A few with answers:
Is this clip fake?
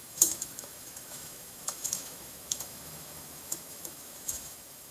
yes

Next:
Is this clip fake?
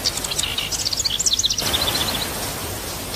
no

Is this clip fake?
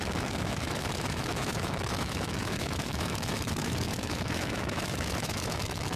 yes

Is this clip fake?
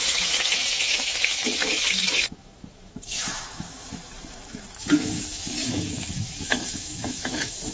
yes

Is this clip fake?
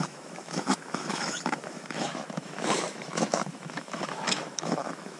yes